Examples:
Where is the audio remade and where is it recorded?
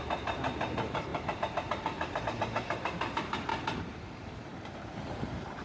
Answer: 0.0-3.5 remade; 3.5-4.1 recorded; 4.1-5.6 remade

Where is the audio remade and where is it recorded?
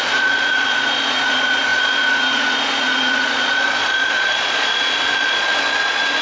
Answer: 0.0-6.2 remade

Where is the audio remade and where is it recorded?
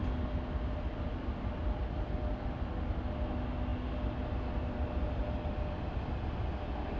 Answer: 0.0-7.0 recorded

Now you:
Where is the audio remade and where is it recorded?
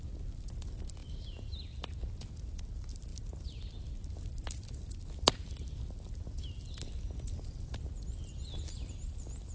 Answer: 0.0-9.5 recorded